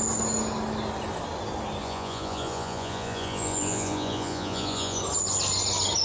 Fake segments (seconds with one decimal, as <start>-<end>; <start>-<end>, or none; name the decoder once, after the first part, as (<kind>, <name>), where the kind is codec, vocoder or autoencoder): 1.8-5.0 (vocoder, Vocos)